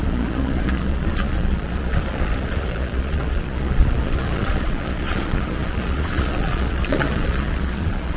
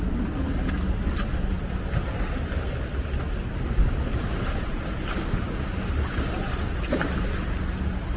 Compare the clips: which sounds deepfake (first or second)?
first